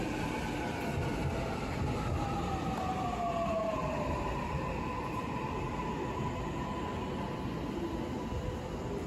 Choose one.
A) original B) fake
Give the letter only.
A